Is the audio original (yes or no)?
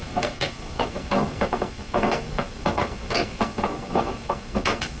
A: no